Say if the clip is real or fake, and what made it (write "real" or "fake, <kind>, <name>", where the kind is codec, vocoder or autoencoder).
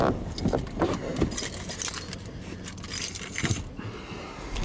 real